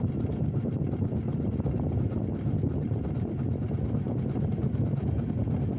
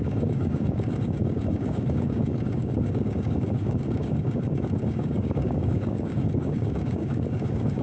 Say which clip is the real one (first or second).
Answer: first